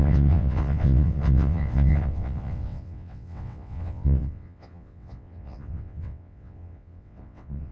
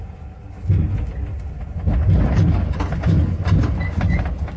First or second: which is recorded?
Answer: second